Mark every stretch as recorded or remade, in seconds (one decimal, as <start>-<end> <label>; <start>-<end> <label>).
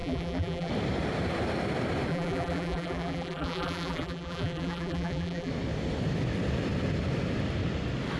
0.0-0.7 remade; 0.7-2.1 recorded; 2.1-5.5 remade; 5.5-8.2 recorded